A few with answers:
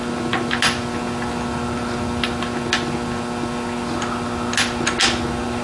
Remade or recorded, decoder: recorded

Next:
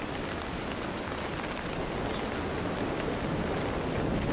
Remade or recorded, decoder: recorded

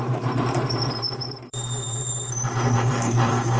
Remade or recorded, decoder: remade, vocoder, BigVGAN v2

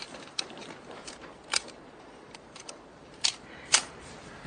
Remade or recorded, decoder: remade, vocoder, BigVGAN v2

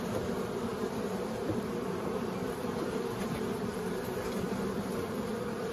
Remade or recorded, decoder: remade, vocoder, BigVGAN v2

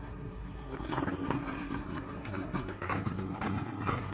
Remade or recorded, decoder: remade, codec, SNAC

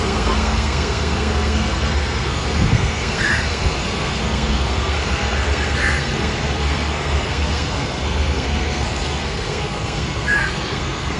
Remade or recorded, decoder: remade, codec, SNAC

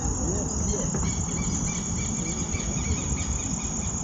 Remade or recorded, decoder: recorded